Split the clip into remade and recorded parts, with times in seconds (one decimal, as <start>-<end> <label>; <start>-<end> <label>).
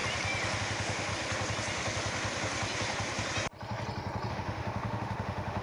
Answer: 0.0-0.6 recorded; 0.6-1.1 remade; 1.1-4.3 recorded; 4.3-5.6 remade